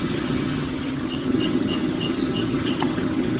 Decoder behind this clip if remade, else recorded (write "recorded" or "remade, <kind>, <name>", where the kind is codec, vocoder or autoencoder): remade, vocoder, HiFi-GAN